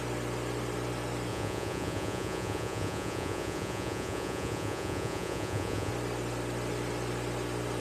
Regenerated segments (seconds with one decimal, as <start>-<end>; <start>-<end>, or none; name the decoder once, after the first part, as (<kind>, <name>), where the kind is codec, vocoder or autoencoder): 1.3-5.9 (vocoder, Vocos)